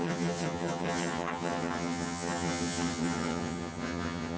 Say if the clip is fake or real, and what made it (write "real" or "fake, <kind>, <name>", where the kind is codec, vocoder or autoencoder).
fake, vocoder, HiFi-GAN